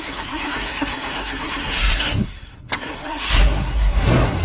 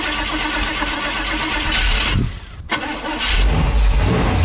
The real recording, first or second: second